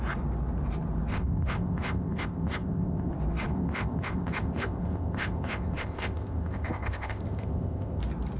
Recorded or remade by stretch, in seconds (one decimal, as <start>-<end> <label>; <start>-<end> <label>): 0.0-1.1 recorded; 1.1-3.1 remade; 3.1-3.5 recorded; 3.5-8.0 remade; 8.0-8.4 recorded